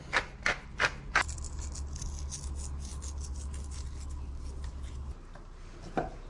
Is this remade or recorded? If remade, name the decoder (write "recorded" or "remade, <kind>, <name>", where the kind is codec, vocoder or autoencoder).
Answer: recorded